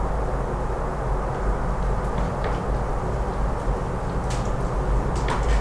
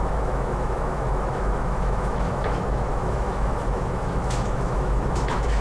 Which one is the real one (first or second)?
first